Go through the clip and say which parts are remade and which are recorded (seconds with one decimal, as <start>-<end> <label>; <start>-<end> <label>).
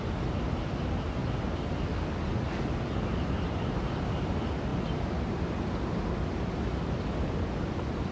0.0-8.1 recorded